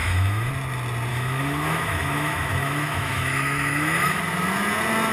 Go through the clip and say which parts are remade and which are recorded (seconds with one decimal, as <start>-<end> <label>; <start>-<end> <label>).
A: 0.0-0.5 remade; 0.5-1.1 recorded; 1.1-4.2 remade; 4.2-5.1 recorded